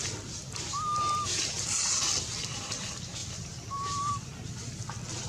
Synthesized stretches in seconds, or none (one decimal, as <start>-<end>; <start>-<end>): 3.2-4.1

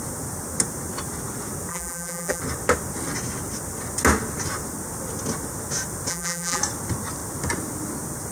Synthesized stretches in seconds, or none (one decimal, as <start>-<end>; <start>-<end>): 1.7-2.4; 6.1-6.6